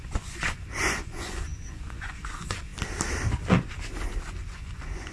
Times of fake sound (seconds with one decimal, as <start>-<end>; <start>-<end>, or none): 0.0-2.7; 4.2-5.1